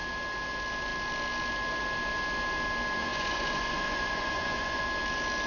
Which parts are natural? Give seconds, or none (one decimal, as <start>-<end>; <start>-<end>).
0.0-3.0; 4.8-5.5